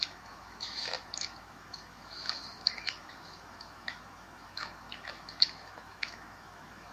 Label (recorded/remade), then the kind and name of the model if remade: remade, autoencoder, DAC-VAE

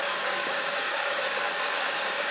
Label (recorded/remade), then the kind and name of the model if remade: remade, codec, DAC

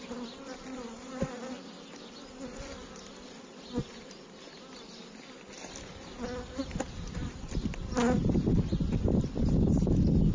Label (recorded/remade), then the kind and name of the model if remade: recorded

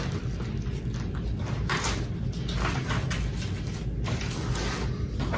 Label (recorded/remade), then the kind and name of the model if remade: recorded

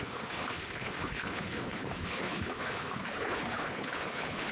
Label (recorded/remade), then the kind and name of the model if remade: remade, codec, HILCodec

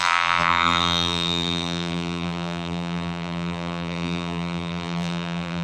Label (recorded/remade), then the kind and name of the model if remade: remade, vocoder, BigVGAN v2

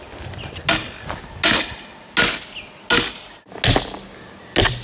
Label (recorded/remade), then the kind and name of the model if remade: recorded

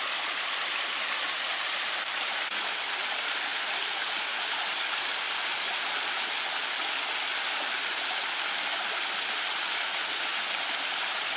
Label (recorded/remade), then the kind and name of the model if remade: recorded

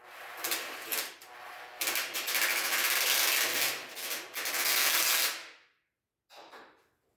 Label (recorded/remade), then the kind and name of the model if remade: recorded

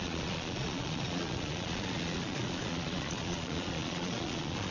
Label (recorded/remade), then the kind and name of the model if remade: remade, vocoder, Vocos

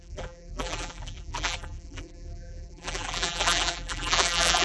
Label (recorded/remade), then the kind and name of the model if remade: remade, vocoder, BigVGAN v2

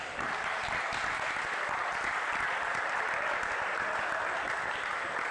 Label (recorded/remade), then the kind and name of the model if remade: recorded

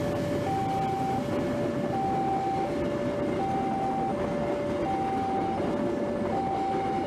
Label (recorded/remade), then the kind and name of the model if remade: recorded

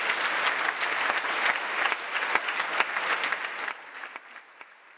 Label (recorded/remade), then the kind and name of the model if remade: recorded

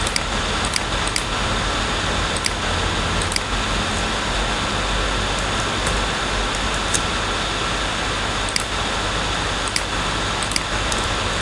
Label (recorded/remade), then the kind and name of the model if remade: recorded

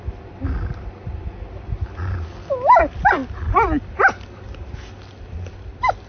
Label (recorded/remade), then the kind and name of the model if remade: recorded